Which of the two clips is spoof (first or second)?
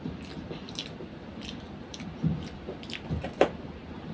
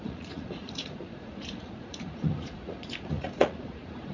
second